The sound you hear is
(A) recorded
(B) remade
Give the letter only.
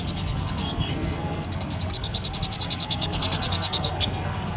B